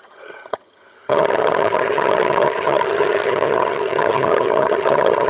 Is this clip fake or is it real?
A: fake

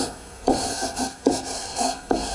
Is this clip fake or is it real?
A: fake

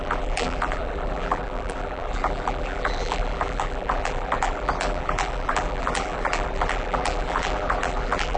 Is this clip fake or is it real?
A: fake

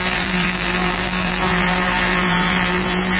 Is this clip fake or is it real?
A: fake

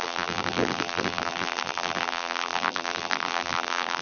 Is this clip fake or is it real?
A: fake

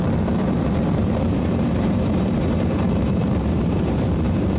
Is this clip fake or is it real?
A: fake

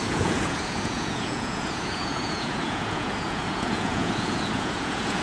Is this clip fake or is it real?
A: fake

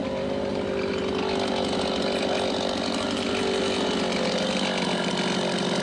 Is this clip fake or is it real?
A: real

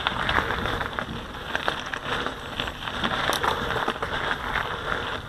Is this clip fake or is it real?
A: real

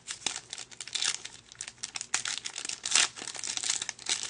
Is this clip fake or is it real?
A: real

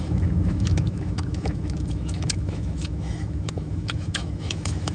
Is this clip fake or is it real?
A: fake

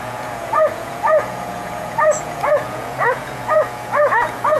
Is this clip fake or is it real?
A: fake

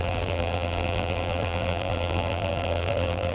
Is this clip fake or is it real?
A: fake